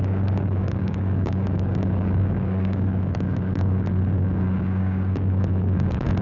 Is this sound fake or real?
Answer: fake